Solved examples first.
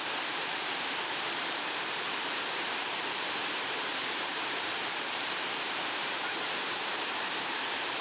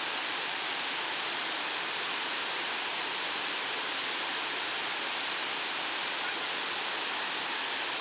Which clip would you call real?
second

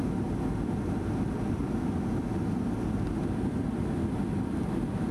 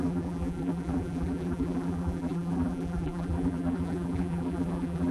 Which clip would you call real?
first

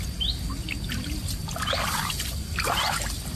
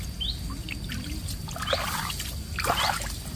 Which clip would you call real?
second